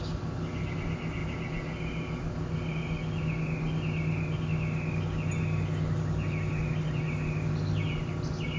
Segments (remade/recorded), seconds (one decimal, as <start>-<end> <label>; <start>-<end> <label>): 0.0-8.6 recorded